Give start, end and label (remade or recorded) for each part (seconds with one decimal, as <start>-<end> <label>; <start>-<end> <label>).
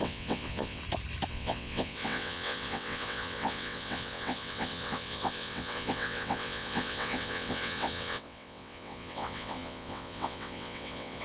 0.0-0.8 remade; 0.8-1.3 recorded; 1.3-11.2 remade